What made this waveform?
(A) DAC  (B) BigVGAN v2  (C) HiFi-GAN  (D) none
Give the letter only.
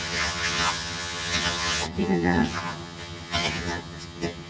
C